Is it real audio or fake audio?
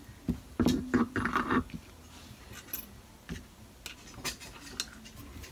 real